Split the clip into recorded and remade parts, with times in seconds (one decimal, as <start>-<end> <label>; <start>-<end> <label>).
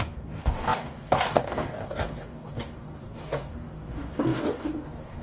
0.0-5.2 remade